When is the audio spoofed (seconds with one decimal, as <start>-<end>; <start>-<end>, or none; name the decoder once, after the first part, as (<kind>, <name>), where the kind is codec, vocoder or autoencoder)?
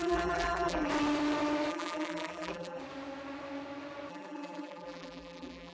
0.0-0.9 (vocoder, BigVGAN v2); 1.7-2.8; 4.1-5.7